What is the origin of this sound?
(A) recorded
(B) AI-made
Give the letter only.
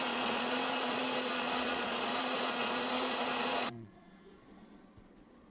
B